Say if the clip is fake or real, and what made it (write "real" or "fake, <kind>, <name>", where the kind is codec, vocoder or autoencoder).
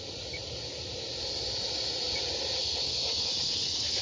real